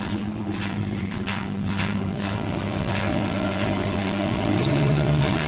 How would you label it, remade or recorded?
remade